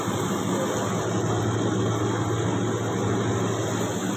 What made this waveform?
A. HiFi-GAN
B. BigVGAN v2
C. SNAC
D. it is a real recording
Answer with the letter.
D